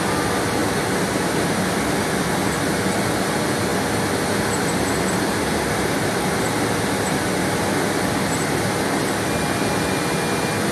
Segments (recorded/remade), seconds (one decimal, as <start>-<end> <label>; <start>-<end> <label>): 0.0-10.7 recorded